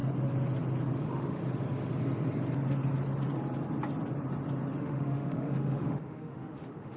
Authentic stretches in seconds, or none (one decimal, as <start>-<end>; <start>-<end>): 0.0-1.0; 1.4-4.8

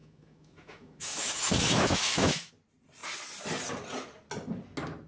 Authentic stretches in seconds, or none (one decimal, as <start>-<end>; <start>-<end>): 2.5-5.1

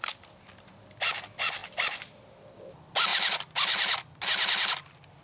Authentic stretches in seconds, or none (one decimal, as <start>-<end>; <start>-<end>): 0.0-5.2

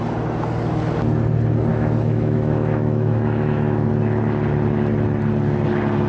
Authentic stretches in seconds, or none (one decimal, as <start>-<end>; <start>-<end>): 0.0-1.7; 3.9-6.1

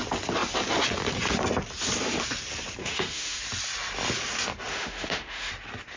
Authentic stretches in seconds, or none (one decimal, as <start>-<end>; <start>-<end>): 0.0-2.8; 3.4-4.7; 5.5-6.0